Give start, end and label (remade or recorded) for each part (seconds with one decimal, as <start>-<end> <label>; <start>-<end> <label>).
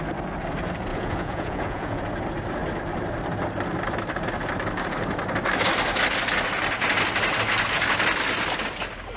0.0-0.9 recorded; 0.9-2.0 remade; 2.0-9.2 recorded